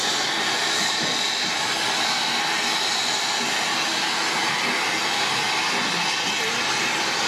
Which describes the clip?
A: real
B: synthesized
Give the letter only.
A